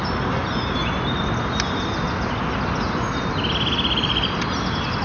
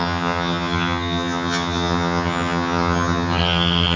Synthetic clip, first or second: second